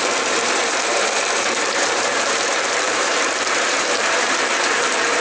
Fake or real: fake